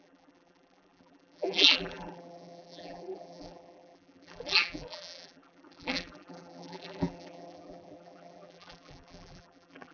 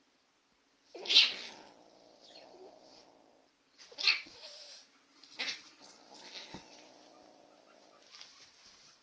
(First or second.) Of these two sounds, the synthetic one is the first